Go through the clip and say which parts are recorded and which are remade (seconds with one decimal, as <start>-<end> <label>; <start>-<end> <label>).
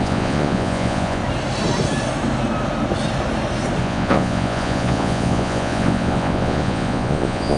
0.0-1.2 remade; 1.2-3.8 recorded; 3.8-7.6 remade